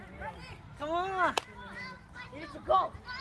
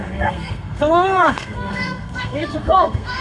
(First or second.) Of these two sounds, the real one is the first